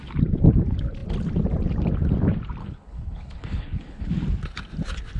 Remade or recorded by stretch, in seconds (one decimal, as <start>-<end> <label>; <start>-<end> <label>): 0.0-2.6 recorded; 2.6-4.1 remade; 4.1-5.2 recorded